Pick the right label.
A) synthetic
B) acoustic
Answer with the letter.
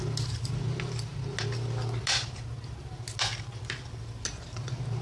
B